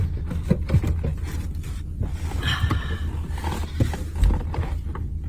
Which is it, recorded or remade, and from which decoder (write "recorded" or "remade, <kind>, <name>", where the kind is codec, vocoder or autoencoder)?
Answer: recorded